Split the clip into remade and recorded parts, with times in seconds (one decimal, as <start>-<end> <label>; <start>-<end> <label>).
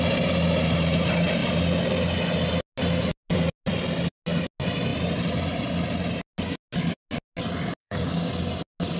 0.0-7.8 recorded; 7.8-8.3 remade; 8.3-9.0 recorded